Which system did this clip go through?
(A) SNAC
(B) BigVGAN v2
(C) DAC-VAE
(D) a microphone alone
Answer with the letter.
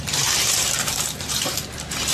B